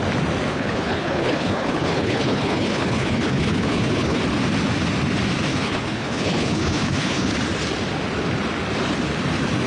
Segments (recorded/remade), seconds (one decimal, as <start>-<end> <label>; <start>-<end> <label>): 0.0-0.5 recorded; 0.5-4.2 remade; 4.2-5.5 recorded; 5.5-7.3 remade; 7.3-9.7 recorded